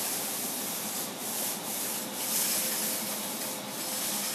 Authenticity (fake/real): real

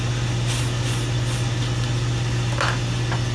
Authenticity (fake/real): real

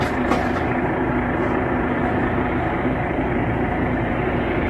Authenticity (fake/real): fake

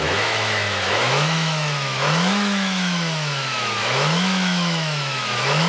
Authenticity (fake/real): fake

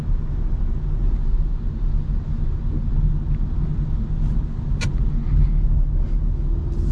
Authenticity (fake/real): real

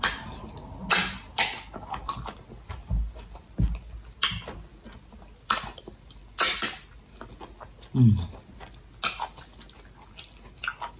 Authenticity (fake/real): real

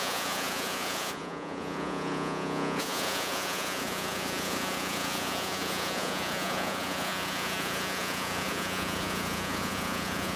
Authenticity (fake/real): fake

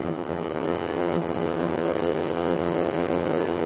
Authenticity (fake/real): fake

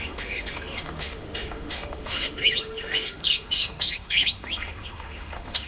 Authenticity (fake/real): fake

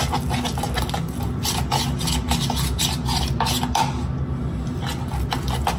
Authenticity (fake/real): real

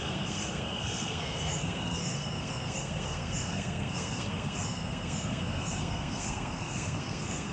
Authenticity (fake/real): fake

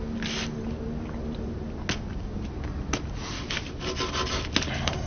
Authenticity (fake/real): real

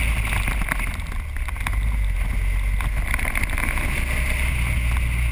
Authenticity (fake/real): real